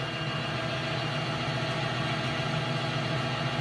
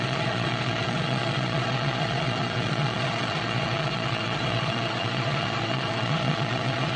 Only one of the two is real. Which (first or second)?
first